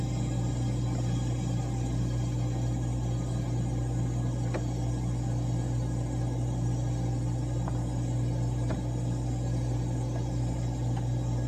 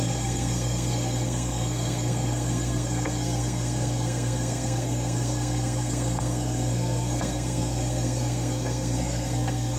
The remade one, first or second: second